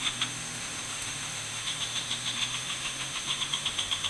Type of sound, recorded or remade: remade